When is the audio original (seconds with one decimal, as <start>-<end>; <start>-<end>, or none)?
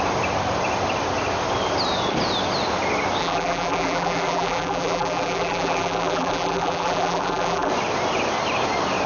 0.0-3.2; 7.7-9.1